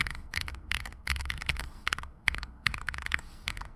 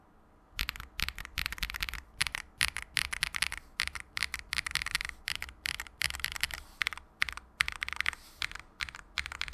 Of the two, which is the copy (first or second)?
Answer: first